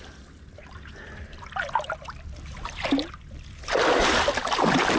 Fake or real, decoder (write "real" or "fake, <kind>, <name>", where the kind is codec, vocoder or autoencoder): real